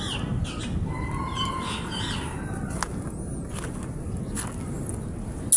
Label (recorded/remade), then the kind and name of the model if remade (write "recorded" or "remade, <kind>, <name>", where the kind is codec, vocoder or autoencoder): recorded